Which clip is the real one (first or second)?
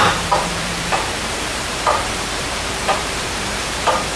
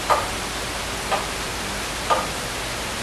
second